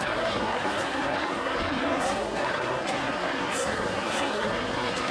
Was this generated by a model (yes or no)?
yes